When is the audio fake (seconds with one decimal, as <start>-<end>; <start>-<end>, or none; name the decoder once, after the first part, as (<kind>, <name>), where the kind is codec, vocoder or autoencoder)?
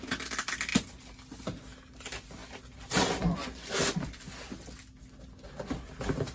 none